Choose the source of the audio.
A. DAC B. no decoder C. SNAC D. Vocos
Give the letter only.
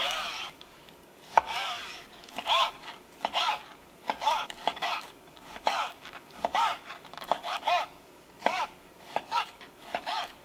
A